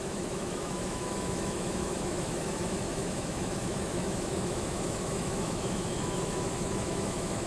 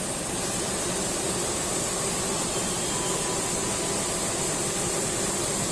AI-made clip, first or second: first